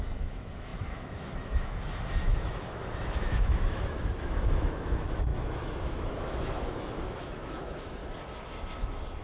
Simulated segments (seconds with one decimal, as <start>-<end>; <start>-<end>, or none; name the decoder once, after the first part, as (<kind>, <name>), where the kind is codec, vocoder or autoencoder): 0.0-8.0 (autoencoder, DAC-VAE)